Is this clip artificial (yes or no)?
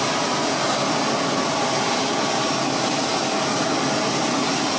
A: no